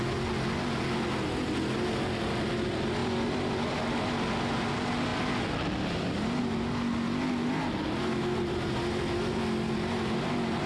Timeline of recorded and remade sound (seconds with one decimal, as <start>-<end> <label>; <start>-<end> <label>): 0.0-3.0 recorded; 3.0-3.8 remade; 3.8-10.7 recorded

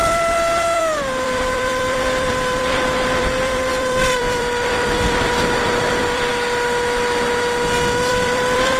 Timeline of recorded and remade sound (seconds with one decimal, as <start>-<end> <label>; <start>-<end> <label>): 0.0-6.3 remade; 6.3-8.1 recorded; 8.1-8.8 remade

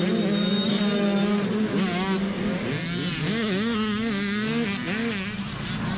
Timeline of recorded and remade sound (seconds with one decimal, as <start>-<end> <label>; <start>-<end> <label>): 0.0-6.0 recorded

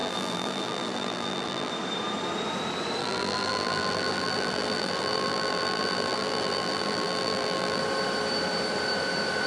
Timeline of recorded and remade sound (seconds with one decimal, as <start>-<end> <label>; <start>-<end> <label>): 0.0-1.7 remade; 1.7-3.0 recorded; 3.0-7.8 remade; 7.8-9.5 recorded